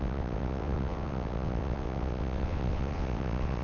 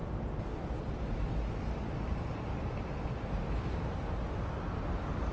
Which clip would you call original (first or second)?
second